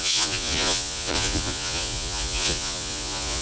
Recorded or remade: remade